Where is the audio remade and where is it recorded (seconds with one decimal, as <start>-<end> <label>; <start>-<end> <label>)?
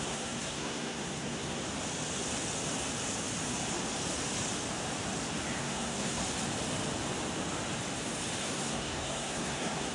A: 0.0-1.6 remade; 1.6-5.6 recorded; 5.6-6.2 remade; 6.2-8.4 recorded; 8.4-9.9 remade